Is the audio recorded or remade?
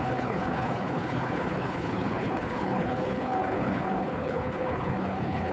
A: remade